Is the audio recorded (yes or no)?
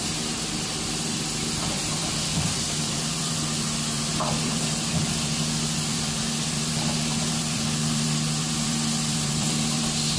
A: no